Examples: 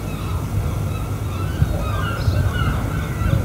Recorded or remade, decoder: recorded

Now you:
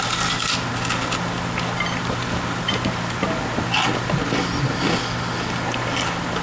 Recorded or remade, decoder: recorded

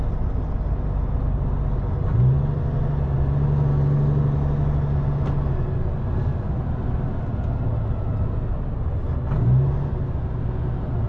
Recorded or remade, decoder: recorded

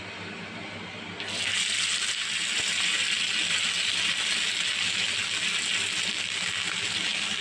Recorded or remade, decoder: recorded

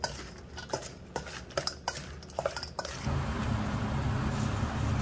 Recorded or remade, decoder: recorded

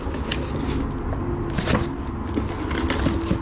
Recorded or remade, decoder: recorded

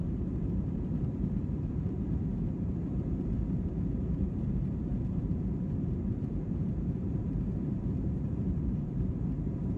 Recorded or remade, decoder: remade, vocoder, BigVGAN v2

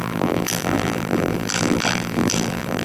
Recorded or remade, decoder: remade, vocoder, BigVGAN v2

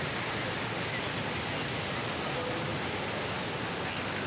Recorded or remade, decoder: recorded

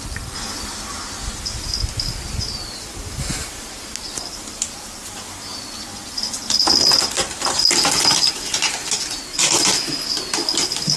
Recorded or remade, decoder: recorded